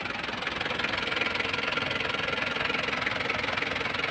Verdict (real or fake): real